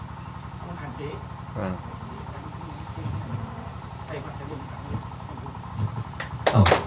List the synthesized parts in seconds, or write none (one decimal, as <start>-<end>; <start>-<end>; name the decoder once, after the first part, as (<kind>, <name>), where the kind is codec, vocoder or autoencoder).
1.6-5.7 (vocoder, BigVGAN v2)